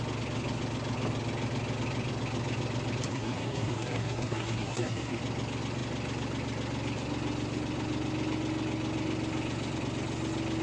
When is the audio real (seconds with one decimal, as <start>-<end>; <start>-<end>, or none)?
0.0-3.1; 5.2-10.6